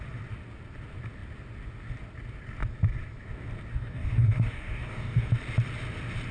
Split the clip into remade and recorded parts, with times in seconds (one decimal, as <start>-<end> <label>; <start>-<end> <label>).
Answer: 0.0-3.7 recorded; 3.7-5.3 remade; 5.3-6.3 recorded